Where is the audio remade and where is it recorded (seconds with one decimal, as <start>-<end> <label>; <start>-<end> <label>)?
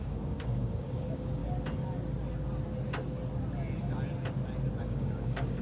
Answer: 0.0-1.4 remade; 1.4-4.8 recorded; 4.8-5.6 remade